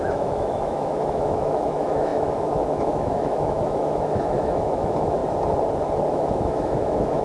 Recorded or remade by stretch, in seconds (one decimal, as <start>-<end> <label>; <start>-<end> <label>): 0.0-5.2 remade; 5.2-6.1 recorded; 6.1-7.2 remade